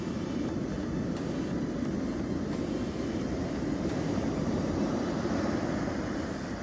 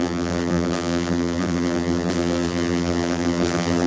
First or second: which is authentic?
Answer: first